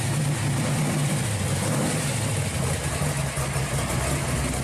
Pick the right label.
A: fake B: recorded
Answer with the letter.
B